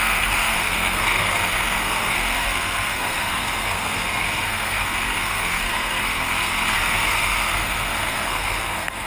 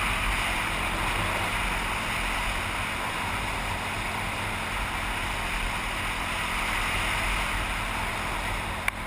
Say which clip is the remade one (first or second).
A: first